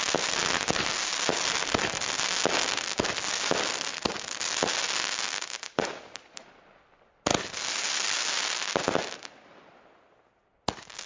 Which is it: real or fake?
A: real